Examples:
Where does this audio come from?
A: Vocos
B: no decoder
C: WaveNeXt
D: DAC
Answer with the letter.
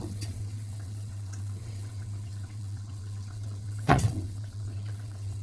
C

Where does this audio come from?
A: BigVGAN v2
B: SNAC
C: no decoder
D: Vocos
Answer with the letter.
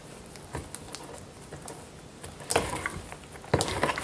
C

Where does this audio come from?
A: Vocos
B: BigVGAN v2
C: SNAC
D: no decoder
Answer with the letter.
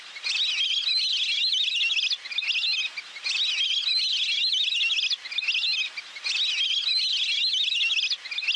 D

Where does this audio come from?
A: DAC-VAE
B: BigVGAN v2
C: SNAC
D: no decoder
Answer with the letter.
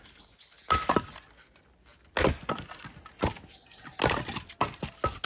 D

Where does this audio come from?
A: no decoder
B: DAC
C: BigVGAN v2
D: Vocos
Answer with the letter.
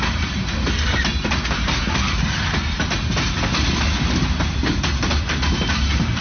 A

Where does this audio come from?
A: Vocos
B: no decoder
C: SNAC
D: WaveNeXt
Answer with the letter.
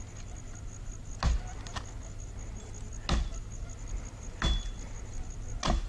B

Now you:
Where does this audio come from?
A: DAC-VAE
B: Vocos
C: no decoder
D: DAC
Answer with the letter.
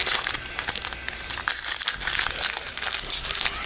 C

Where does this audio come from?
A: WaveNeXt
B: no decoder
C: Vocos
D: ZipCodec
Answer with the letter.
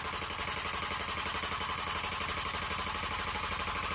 B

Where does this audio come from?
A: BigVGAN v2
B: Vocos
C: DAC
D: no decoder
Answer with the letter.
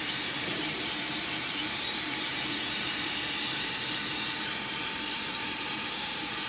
A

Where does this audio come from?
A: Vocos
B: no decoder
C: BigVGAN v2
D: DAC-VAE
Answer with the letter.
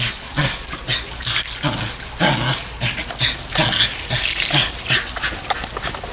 B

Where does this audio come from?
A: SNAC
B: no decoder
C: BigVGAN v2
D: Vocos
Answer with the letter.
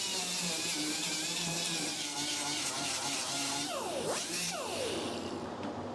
C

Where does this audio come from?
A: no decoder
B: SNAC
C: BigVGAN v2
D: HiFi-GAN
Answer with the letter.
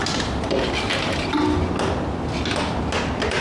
A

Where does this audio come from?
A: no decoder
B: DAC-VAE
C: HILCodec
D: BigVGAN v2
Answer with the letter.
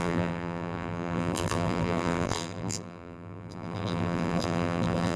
D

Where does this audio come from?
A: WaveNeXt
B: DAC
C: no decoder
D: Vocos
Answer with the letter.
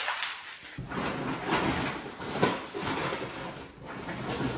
C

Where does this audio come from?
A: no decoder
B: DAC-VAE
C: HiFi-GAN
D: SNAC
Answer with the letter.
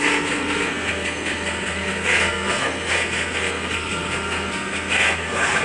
D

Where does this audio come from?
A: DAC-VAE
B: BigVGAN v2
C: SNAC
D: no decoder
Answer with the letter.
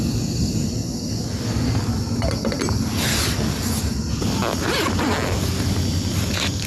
D